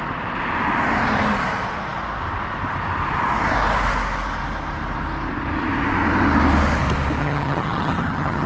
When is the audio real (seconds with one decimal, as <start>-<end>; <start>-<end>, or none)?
0.0-7.2